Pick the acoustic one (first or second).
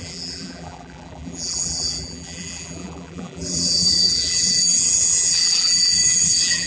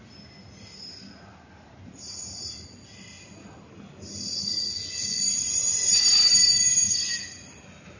second